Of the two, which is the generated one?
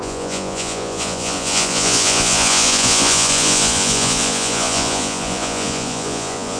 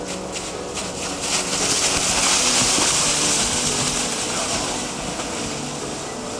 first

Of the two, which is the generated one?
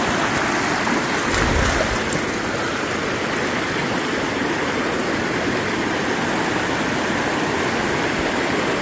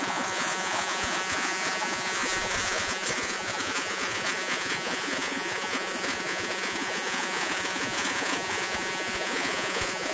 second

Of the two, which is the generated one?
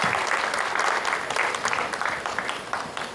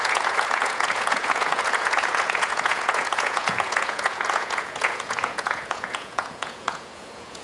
second